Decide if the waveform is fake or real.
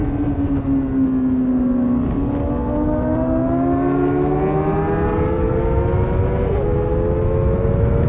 real